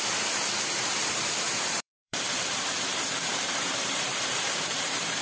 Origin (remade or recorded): remade